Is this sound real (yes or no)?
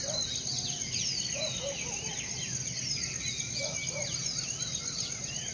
yes